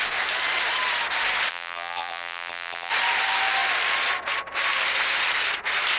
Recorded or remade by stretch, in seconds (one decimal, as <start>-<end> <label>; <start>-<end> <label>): 0.0-1.5 recorded; 1.5-2.9 remade; 2.9-6.0 recorded